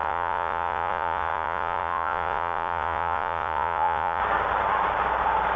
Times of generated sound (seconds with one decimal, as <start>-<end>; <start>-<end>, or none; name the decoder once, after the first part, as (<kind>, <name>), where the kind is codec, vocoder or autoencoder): 0.0-4.2 (vocoder, Vocos)